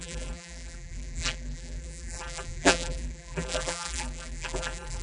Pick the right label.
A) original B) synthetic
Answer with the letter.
B